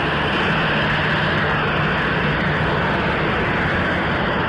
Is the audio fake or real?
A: real